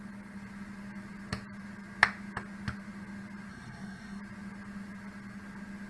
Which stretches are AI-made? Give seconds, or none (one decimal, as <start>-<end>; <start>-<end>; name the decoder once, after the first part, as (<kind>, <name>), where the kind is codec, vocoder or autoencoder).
3.5-4.2 (codec, SNAC)